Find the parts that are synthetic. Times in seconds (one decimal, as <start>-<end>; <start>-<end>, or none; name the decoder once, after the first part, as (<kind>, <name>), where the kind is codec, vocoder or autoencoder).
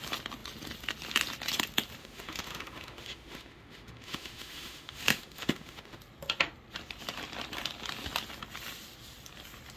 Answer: 2.0-6.0 (autoencoder, DAC-VAE)